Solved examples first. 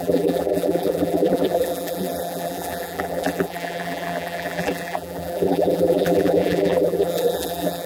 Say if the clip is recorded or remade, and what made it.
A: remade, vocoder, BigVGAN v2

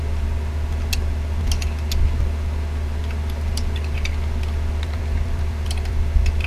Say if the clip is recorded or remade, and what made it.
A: recorded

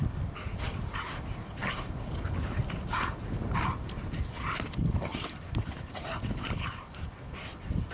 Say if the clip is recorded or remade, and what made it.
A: recorded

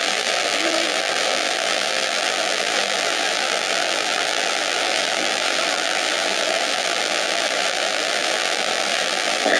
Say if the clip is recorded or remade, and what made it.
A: remade, vocoder, BigVGAN v2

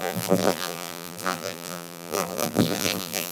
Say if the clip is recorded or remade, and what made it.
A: remade, vocoder, BigVGAN v2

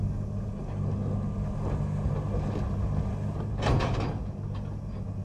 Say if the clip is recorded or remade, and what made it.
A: recorded